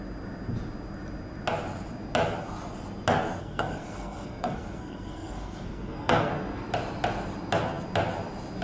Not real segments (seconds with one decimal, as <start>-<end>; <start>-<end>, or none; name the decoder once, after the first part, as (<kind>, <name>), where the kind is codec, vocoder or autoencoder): 3.4-6.3 (codec, SNAC)